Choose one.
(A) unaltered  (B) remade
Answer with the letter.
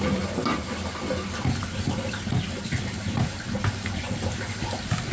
A